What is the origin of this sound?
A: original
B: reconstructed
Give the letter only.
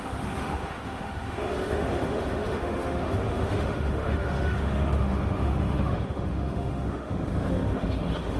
B